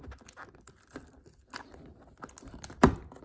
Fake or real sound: real